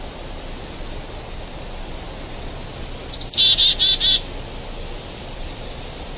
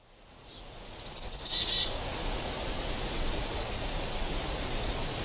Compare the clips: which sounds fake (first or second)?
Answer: second